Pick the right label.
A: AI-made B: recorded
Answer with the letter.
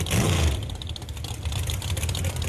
A